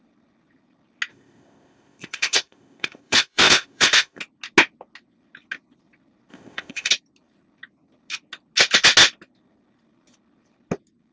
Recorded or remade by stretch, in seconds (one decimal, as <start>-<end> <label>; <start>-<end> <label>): 0.0-1.1 recorded; 1.1-4.2 remade; 4.2-6.3 recorded; 6.3-6.9 remade; 6.9-11.1 recorded